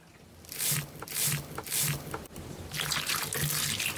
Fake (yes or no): no